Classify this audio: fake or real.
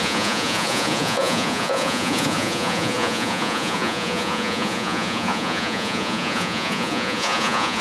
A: fake